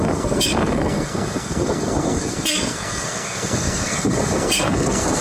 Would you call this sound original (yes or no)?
no